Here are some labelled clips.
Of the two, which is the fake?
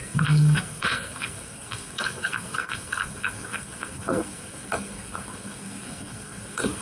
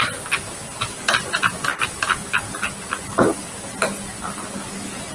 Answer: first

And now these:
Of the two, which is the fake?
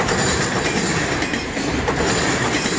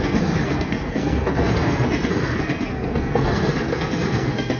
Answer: second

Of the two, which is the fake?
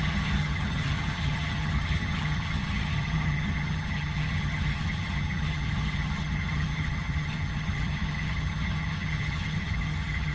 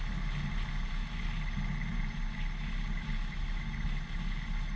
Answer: first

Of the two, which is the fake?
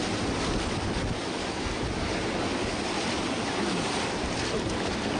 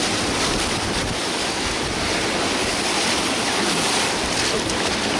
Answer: second